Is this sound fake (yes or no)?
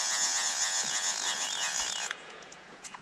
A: yes